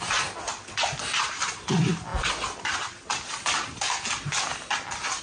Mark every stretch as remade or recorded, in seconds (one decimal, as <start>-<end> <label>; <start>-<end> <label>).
0.0-5.2 recorded